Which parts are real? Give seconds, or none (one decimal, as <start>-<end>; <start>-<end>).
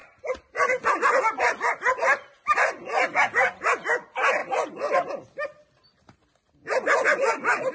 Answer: 0.0-7.7